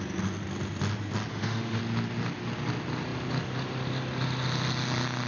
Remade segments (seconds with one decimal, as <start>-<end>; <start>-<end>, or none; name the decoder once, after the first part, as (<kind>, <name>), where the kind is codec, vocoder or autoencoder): 1.3-1.8 (autoencoder, DAC-VAE)